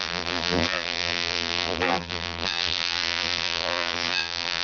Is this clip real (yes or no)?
no